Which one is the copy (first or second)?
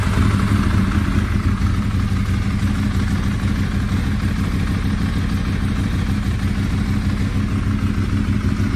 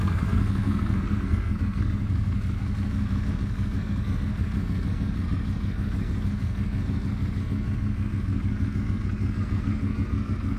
second